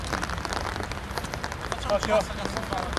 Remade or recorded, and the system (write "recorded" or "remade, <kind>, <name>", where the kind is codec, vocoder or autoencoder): recorded